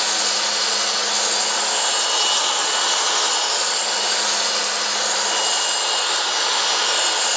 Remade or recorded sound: recorded